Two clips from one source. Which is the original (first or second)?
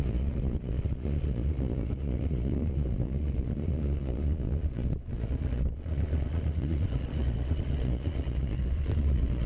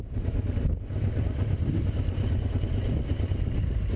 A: second